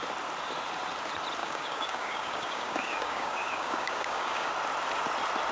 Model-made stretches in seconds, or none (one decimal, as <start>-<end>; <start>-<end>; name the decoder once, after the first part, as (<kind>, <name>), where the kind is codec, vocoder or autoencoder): 1.4-4.5 (codec, DAC)